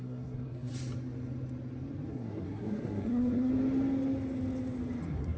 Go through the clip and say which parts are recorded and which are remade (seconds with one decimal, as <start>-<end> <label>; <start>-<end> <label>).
0.0-0.7 remade; 0.7-2.1 recorded; 2.1-3.5 remade; 3.5-5.0 recorded; 5.0-5.4 remade